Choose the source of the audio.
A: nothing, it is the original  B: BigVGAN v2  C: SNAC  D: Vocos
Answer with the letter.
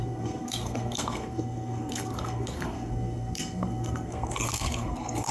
C